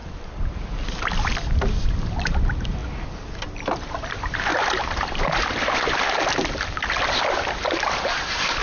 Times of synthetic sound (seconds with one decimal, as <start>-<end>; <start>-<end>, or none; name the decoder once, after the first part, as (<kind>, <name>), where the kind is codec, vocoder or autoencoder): 0.0-0.8 (vocoder, BigVGAN v2)

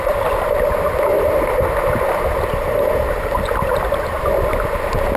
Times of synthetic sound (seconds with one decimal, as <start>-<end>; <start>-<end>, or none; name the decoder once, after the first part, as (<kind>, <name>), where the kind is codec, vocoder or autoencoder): 1.1-4.2 (vocoder, BigVGAN v2)

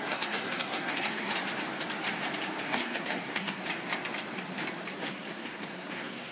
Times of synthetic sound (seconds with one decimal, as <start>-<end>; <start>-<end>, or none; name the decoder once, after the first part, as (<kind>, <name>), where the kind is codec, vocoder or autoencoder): 0.0-1.3 (codec, SNAC); 2.6-3.6; 5.0-6.3